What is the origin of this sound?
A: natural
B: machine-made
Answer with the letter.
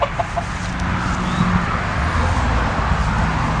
A